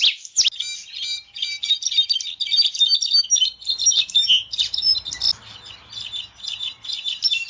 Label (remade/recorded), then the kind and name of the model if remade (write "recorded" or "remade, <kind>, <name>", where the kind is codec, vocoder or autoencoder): recorded